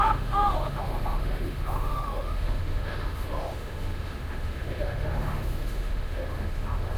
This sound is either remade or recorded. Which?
remade